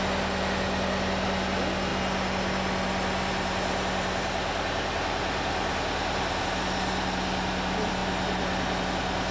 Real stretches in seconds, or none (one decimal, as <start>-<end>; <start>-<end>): 0.0-9.3